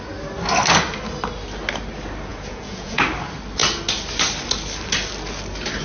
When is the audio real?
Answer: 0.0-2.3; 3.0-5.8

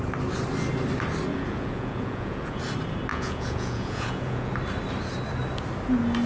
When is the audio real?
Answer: 0.0-1.3; 2.6-3.1; 4.5-6.3

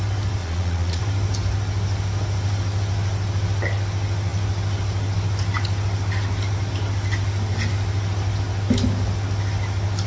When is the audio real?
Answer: 0.0-0.4; 1.0-10.1